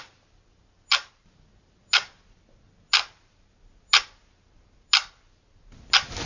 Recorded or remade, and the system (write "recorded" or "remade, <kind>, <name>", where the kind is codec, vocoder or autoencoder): recorded